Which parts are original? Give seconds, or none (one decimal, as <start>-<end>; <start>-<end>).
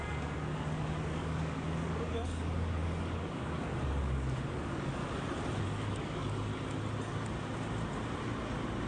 5.0-5.6; 6.5-8.9